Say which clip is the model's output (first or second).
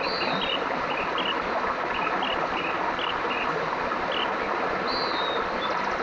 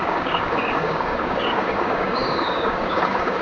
second